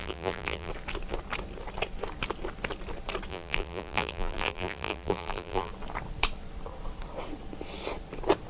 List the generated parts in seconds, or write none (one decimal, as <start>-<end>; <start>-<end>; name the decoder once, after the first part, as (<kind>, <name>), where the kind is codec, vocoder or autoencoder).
0.0-0.7 (vocoder, BigVGAN v2); 3.3-5.7